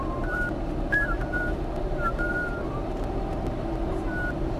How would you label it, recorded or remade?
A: recorded